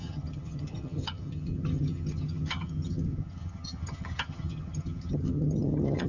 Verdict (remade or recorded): remade